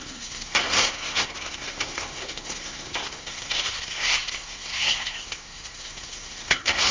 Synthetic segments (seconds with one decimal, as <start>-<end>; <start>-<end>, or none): 0.0-6.9